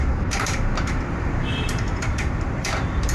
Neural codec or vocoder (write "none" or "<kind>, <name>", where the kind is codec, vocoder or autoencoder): vocoder, BigVGAN v2